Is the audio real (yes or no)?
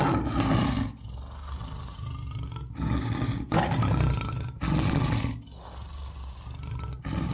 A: yes